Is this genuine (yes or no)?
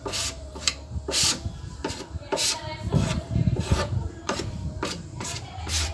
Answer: no